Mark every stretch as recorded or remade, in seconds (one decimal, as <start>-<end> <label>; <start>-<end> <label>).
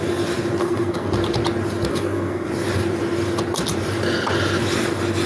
0.0-0.6 recorded; 0.6-1.1 remade; 1.1-1.9 recorded; 1.9-2.5 remade; 2.5-5.3 recorded